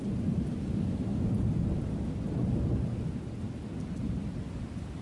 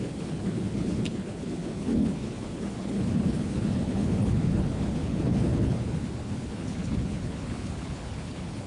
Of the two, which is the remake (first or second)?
second